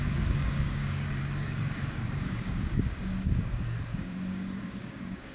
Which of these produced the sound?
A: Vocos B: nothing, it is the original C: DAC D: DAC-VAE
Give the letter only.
C